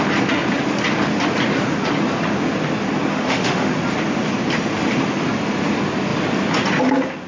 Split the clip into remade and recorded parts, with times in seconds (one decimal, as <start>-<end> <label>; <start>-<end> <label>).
0.0-3.1 recorded; 3.1-3.7 remade; 3.7-7.3 recorded